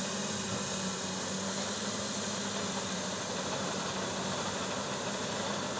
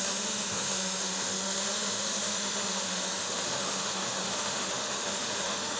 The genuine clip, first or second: first